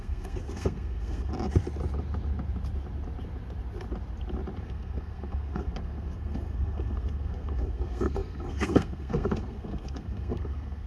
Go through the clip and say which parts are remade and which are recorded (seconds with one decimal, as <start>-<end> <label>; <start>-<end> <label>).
0.0-1.3 remade; 1.3-4.6 recorded; 4.6-10.9 remade